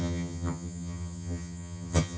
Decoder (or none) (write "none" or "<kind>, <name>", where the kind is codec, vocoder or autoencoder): vocoder, HiFi-GAN